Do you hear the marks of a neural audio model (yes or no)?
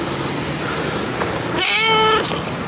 no